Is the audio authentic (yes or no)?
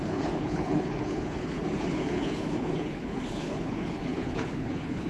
no